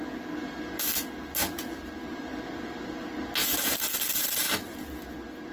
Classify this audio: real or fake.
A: real